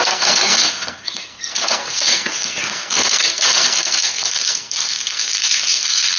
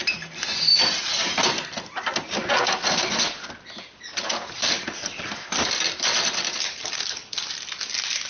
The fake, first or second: first